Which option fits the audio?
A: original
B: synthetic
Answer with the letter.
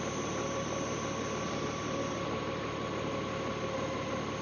A